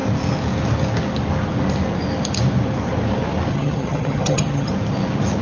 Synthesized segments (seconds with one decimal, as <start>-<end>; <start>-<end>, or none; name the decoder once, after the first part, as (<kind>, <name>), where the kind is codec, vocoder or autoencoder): 3.5-4.7 (vocoder, HiFi-GAN)